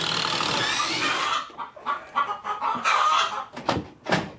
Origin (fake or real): real